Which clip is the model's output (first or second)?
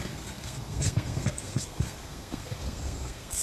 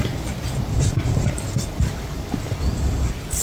first